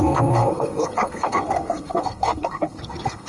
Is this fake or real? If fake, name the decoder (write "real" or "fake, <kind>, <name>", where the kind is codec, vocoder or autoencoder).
fake, codec, SNAC